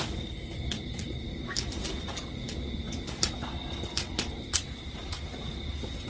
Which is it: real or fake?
real